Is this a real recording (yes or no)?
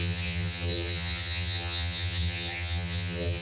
no